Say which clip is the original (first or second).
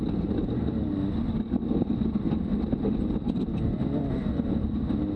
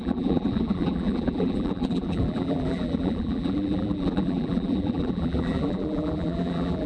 first